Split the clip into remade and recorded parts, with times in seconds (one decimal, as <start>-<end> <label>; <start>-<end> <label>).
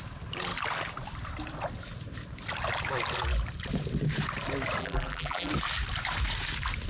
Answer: 0.0-4.8 recorded; 4.8-5.5 remade; 5.5-6.9 recorded